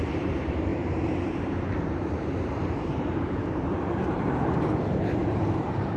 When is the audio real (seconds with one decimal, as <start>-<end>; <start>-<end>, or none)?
none